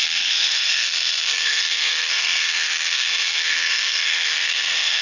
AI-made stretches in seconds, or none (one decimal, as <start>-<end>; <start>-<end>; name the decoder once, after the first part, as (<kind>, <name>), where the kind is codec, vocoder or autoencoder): 0.0-5.0 (codec, SNAC)